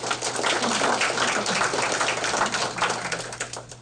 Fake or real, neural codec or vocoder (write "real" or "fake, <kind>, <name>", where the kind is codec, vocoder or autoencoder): real